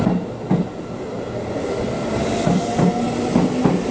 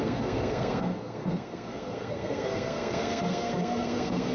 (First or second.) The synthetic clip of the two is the second